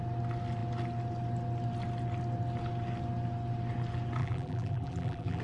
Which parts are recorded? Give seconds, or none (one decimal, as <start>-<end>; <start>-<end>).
0.0-4.2